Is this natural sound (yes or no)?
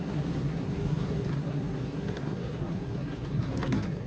no